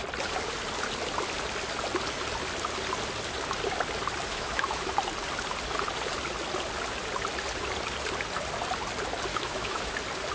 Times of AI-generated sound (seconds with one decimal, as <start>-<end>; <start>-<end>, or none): 4.3-4.9; 9.3-9.9